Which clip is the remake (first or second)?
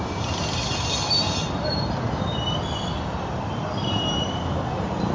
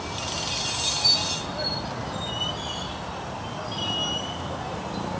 first